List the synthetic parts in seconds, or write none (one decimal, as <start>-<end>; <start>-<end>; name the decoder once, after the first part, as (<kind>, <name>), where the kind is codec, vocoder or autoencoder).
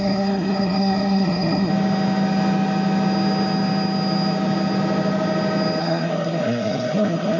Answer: 0.0-1.7 (codec, SNAC); 5.8-7.4